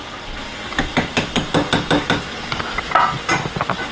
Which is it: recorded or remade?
recorded